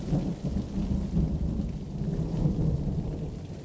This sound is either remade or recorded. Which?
recorded